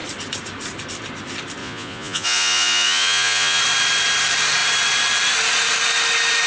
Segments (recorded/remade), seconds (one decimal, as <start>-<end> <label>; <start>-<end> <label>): 0.0-1.6 recorded; 1.6-3.6 remade; 3.6-6.5 recorded